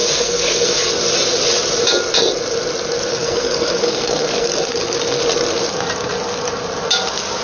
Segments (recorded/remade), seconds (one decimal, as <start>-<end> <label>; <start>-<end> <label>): 0.0-0.9 remade; 0.9-3.1 recorded; 3.1-5.2 remade; 5.2-7.4 recorded

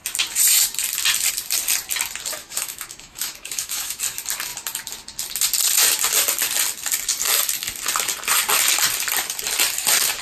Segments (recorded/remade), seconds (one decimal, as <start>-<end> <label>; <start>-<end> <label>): 0.0-2.4 recorded; 2.4-4.0 remade; 4.0-10.2 recorded